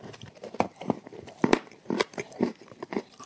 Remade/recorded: remade